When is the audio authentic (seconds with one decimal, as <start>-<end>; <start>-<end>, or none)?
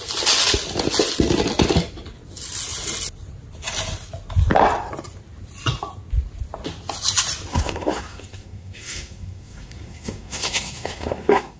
0.0-7.5